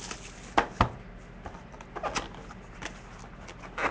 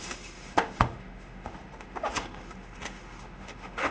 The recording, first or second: first